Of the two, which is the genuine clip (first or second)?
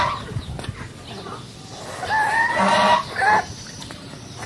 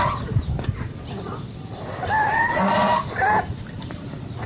first